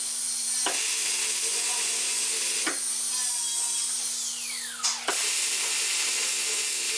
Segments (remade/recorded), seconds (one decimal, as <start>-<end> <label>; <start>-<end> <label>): 0.0-1.5 recorded; 1.5-2.2 remade; 2.2-7.0 recorded